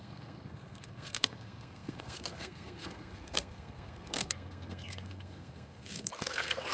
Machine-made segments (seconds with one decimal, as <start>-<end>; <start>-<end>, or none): 0.0-6.7